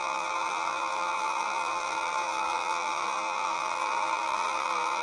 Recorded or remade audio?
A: remade